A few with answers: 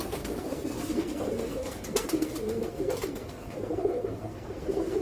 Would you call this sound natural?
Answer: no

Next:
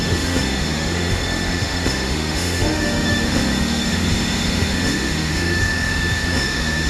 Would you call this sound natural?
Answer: no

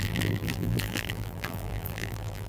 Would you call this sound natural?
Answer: no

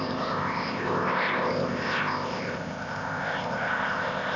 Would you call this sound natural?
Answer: no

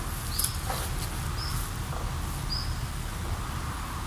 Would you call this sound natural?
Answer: yes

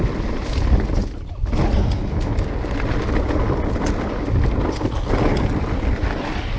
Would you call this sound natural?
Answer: yes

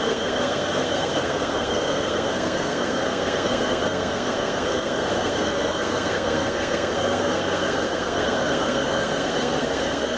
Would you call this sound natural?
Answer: no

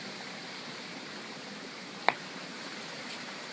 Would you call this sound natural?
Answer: no